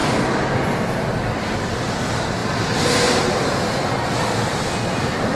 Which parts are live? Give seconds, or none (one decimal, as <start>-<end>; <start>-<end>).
0.0-5.3